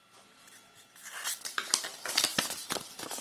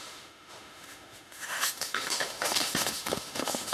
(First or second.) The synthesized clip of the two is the second